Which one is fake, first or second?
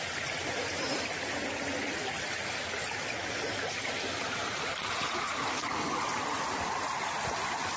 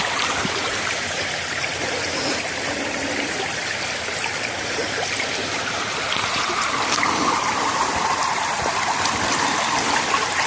second